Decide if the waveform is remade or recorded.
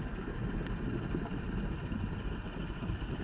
recorded